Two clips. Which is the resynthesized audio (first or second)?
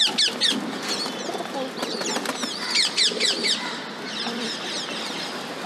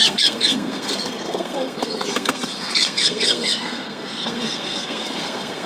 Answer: second